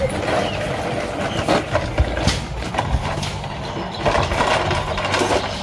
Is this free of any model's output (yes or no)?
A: yes